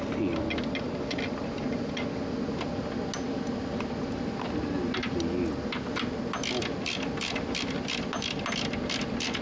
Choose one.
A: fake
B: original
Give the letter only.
B